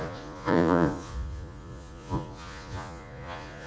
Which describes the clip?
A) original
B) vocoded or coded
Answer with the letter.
B